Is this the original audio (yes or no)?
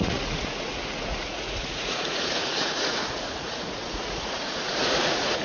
no